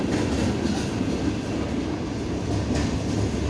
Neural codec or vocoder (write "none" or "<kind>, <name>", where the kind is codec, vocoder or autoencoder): none